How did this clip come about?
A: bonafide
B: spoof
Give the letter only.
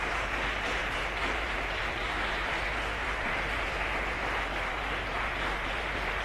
B